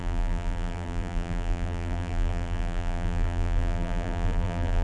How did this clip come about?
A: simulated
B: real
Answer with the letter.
A